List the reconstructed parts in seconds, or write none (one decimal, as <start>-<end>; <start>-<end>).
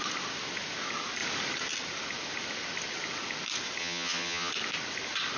3.8-4.5